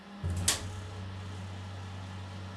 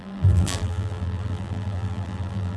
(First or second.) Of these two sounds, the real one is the first